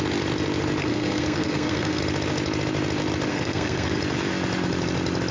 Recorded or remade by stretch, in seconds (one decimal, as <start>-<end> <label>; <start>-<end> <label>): 0.0-0.8 recorded; 0.8-2.0 remade; 2.0-3.3 recorded; 3.3-4.0 remade; 4.0-5.3 recorded